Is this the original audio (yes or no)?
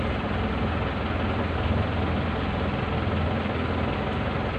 yes